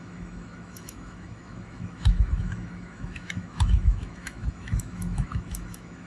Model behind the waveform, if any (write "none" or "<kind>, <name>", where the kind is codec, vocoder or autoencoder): autoencoder, DAC-VAE